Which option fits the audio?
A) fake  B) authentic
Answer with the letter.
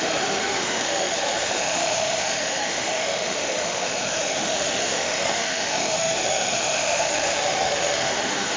A